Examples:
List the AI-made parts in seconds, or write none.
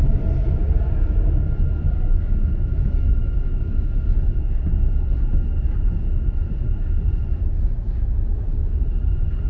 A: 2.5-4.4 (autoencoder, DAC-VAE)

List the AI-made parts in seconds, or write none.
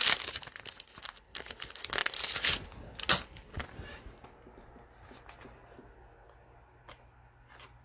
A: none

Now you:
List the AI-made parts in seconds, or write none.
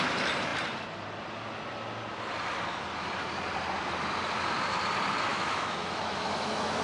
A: 5.3-6.8 (autoencoder, DAC-VAE)